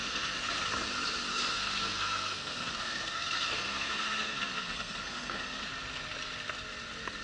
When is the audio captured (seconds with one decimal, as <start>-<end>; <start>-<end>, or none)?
0.6-1.3; 5.6-7.2